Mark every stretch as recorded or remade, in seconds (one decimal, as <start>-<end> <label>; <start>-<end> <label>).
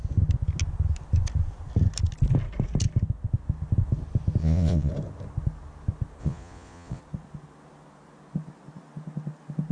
0.0-4.4 recorded; 4.4-4.9 remade; 4.9-6.2 recorded; 6.2-7.0 remade; 7.0-9.7 recorded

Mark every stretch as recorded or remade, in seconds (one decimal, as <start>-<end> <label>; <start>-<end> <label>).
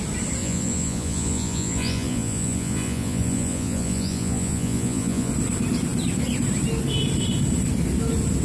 0.0-0.4 recorded; 0.4-5.3 remade; 5.3-8.4 recorded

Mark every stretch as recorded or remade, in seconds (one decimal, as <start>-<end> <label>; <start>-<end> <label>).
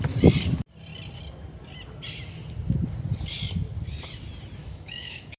0.0-4.6 recorded; 4.6-5.4 remade